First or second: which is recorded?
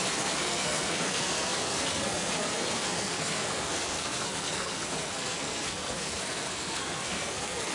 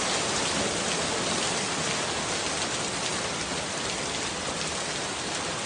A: second